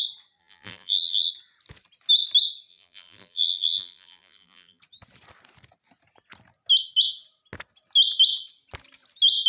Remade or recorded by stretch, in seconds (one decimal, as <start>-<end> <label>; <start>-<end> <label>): 0.0-0.4 recorded; 0.4-1.3 remade; 1.3-2.7 recorded; 2.7-4.8 remade; 4.8-9.5 recorded